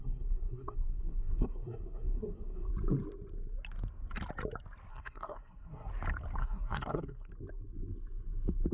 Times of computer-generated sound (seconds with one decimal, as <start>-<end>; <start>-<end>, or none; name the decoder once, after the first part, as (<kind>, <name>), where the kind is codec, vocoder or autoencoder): 0.0-2.7 (codec, SNAC); 4.9-5.9; 6.4-7.3